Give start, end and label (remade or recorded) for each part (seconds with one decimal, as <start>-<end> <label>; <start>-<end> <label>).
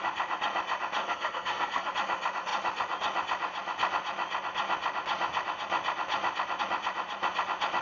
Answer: 0.0-1.0 recorded; 1.0-1.9 remade; 1.9-7.8 recorded